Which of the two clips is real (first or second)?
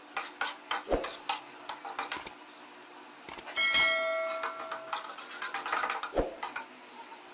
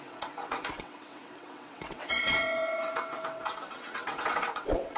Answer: first